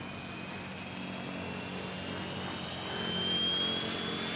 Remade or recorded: recorded